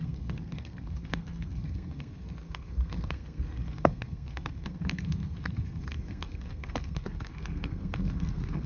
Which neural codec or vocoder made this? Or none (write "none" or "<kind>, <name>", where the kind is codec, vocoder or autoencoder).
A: codec, SNAC